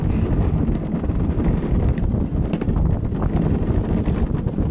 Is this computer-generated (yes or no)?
no